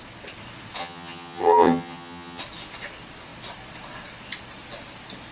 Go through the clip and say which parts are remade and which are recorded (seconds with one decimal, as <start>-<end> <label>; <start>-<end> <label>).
0.0-0.8 recorded; 0.8-2.4 remade; 2.4-5.3 recorded

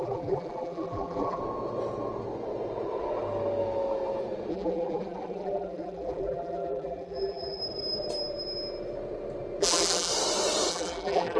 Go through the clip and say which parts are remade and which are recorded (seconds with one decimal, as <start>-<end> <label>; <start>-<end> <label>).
0.0-1.4 remade; 1.4-4.5 recorded; 4.5-7.6 remade; 7.6-9.6 recorded; 9.6-10.1 remade; 10.1-10.7 recorded; 10.7-11.4 remade